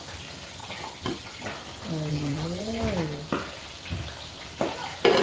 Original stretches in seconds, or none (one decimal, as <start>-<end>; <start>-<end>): 0.0-0.6; 1.5-2.1; 2.8-5.2